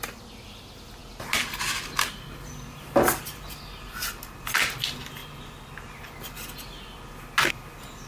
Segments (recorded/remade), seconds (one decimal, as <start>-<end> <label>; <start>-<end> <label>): 0.0-8.1 recorded